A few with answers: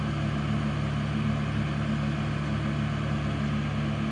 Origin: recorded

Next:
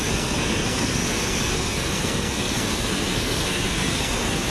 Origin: remade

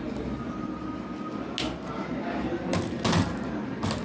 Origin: recorded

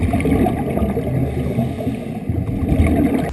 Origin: recorded